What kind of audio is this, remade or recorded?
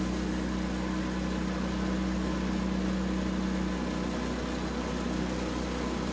recorded